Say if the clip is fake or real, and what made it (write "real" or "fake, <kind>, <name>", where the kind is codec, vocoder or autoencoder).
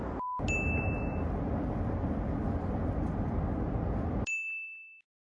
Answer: real